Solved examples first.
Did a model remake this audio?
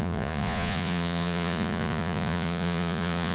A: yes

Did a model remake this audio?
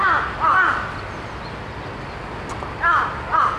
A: no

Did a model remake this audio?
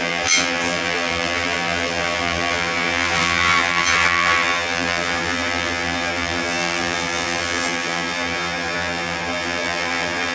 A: yes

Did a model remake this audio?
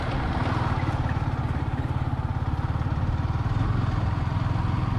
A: no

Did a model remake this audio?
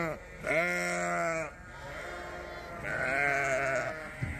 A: no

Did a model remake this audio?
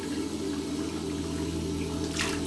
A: no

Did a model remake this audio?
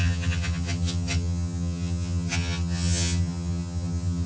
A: yes